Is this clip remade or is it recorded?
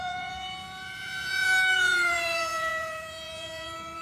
remade